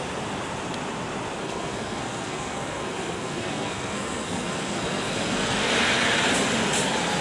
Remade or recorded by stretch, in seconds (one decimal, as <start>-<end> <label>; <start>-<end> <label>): 0.0-1.4 recorded; 1.4-5.7 remade; 5.7-7.2 recorded